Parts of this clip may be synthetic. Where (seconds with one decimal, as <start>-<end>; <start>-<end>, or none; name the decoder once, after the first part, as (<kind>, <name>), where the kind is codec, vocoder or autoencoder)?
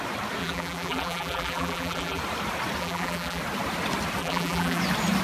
0.4-2.2 (vocoder, BigVGAN v2); 2.8-3.4; 4.2-4.8